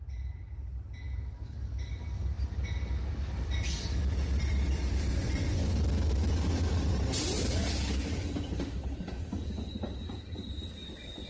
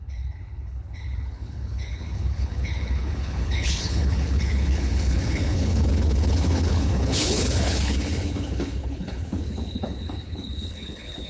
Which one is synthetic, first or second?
second